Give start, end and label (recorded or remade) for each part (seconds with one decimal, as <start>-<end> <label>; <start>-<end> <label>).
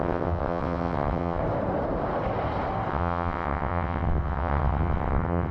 0.0-1.4 remade; 1.4-2.9 recorded; 2.9-5.5 remade